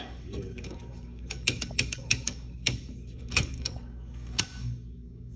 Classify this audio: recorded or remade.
remade